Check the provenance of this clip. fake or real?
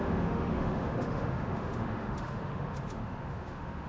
fake